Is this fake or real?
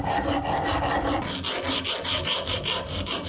real